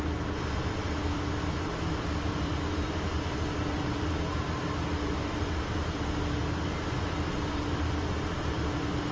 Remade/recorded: recorded